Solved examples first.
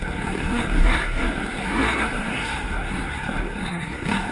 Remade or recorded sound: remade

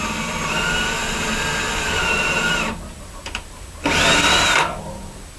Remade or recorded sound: recorded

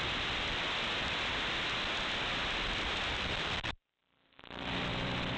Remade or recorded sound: remade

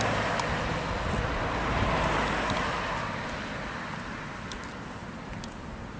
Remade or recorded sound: recorded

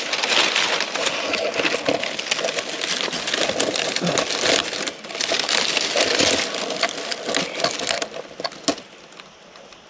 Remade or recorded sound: recorded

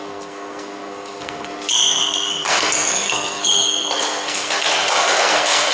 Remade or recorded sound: remade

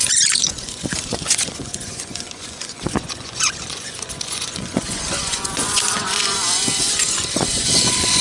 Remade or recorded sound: remade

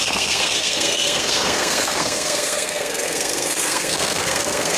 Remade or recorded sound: remade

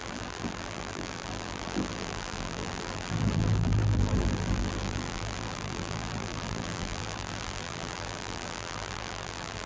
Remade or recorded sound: remade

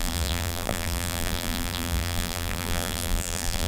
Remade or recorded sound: remade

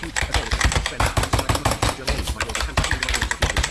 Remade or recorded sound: recorded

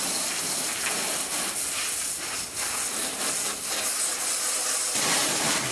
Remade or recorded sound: recorded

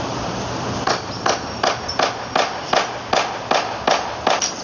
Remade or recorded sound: recorded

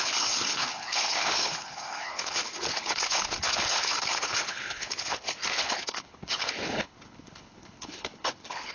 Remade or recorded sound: remade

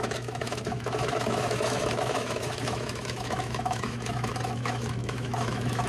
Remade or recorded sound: remade